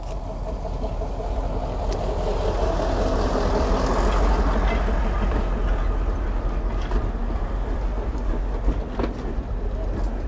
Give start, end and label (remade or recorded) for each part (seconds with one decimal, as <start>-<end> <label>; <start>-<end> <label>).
0.0-10.3 recorded